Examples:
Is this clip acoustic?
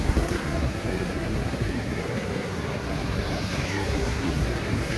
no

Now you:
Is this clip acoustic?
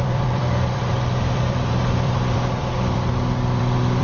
no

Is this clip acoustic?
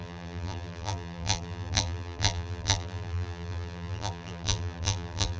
no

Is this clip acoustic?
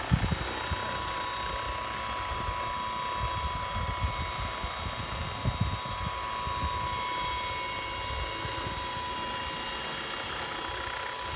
yes